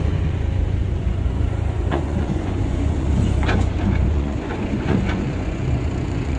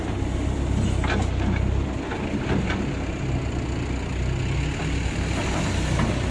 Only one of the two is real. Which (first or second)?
second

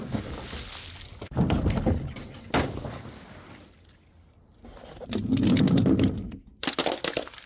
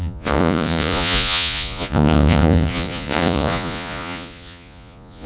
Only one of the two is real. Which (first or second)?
first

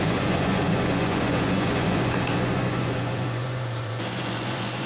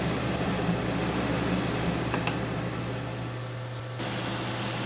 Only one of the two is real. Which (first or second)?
second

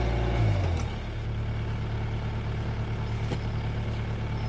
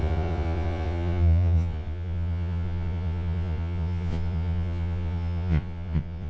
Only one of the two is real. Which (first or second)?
first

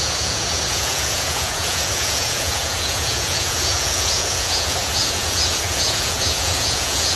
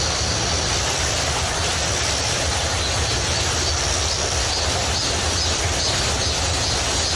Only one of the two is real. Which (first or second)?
second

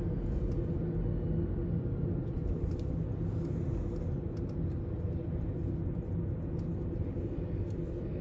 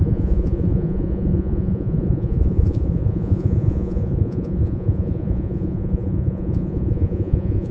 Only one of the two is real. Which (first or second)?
first